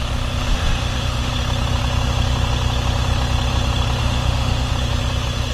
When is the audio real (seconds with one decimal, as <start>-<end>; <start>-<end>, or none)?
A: 0.0-0.5; 1.3-4.0; 4.7-5.5